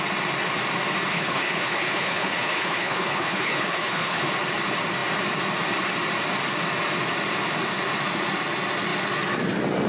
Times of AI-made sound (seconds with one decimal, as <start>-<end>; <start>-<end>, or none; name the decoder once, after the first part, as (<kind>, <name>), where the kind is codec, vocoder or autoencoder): 1.1-4.2 (codec, HILCodec)